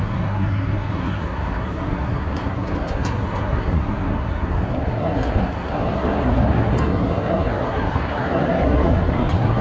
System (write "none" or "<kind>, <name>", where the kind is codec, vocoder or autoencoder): codec, SNAC